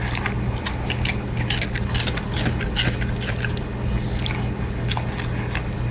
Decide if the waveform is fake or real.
real